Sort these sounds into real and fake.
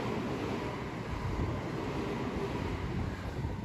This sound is real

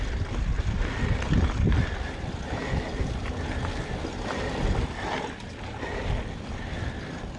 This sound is real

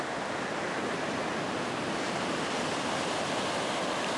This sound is real